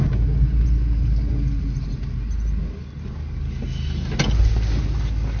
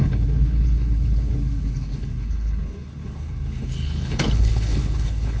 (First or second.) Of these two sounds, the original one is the first